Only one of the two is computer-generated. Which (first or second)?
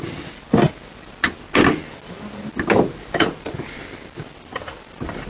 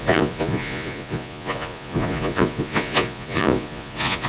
second